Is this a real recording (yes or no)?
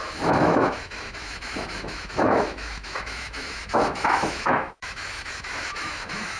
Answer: no